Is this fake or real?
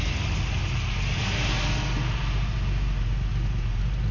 real